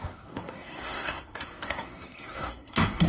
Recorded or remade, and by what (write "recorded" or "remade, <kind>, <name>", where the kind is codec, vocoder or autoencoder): remade, codec, SNAC